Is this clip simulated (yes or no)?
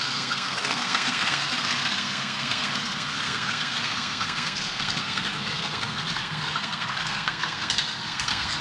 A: yes